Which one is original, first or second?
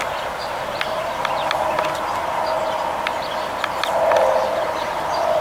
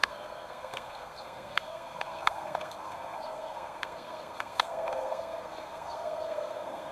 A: first